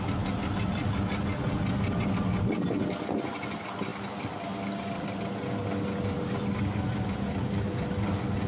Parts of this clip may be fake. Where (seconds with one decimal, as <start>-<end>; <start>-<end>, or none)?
none